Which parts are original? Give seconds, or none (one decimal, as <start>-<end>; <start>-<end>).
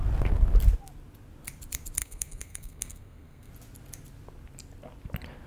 0.0-2.0; 3.5-5.5